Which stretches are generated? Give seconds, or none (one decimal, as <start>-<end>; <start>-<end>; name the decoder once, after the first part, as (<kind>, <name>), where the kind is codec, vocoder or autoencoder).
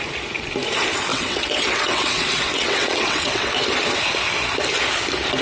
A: 1.1-3.5 (vocoder, WaveNeXt)